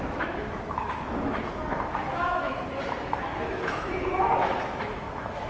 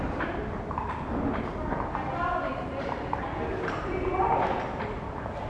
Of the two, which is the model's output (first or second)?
first